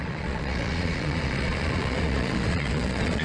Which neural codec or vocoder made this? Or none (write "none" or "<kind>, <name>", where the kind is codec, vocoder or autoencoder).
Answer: vocoder, Vocos